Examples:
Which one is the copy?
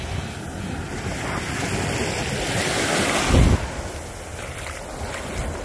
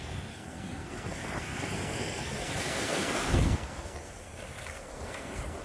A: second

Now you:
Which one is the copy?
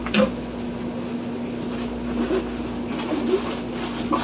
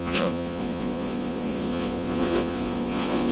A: second